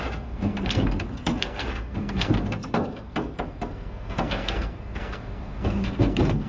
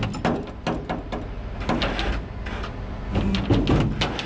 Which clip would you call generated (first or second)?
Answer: first